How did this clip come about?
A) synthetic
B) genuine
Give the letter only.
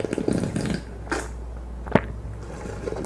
B